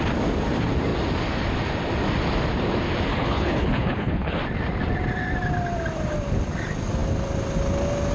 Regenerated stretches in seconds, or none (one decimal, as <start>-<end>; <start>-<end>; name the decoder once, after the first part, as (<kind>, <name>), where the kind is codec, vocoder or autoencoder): 3.1-4.4 (codec, HILCodec)